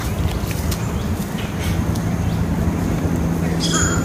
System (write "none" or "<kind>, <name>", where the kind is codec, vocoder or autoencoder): none